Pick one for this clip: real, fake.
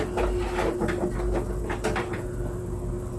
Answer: real